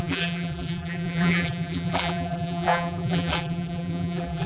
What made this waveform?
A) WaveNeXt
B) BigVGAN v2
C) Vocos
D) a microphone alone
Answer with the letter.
B